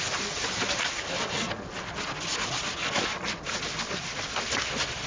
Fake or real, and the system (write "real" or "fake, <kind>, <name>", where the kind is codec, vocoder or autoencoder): real